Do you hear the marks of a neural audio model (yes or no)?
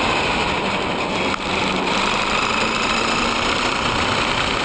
no